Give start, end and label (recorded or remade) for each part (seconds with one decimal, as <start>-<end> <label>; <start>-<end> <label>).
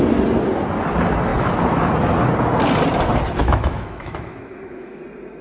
0.0-1.3 recorded; 1.3-1.9 remade; 1.9-3.4 recorded; 3.4-5.0 remade; 5.0-5.4 recorded